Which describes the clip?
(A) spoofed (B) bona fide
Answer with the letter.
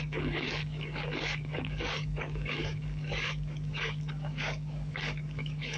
A